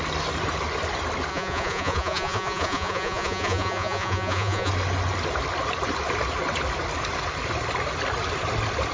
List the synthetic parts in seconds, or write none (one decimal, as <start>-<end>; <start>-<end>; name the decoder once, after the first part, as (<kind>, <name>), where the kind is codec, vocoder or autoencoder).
1.3-4.7 (vocoder, Vocos)